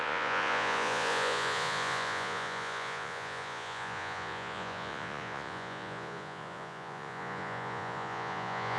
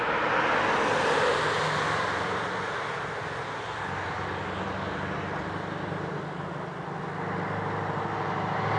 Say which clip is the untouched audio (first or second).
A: second